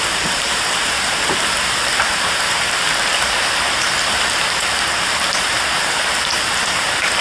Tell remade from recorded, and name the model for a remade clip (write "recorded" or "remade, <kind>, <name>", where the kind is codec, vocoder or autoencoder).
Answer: remade, vocoder, BigVGAN v2